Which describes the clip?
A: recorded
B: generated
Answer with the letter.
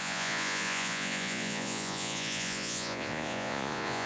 B